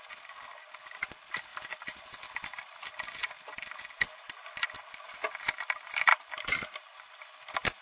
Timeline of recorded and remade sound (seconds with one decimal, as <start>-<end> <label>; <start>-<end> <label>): 0.0-7.8 recorded